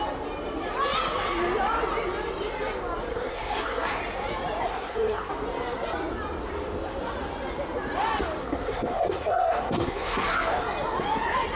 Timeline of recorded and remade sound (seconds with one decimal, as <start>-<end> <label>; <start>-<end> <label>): 0.0-3.1 recorded; 3.1-4.0 remade; 4.0-4.7 recorded; 4.7-5.3 remade; 5.3-8.4 recorded; 8.4-10.6 remade; 10.6-11.6 recorded